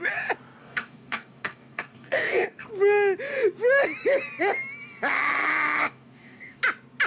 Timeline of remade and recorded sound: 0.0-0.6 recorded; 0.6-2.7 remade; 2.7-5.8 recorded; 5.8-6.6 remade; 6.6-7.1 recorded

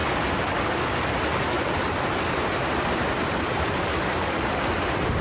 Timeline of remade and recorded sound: 0.0-5.2 recorded

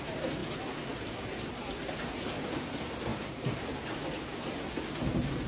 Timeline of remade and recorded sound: 0.0-5.5 recorded

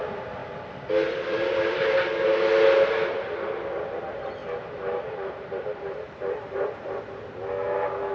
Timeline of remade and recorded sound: 0.0-4.4 recorded; 4.4-7.0 remade; 7.0-8.1 recorded